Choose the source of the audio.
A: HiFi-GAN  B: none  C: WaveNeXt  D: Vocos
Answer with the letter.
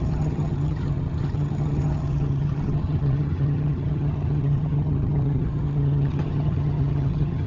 A